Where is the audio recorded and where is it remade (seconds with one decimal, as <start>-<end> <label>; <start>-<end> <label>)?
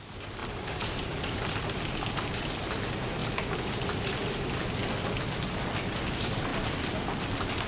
0.0-0.4 recorded; 0.4-1.4 remade; 1.4-3.2 recorded; 3.2-4.4 remade; 4.4-7.7 recorded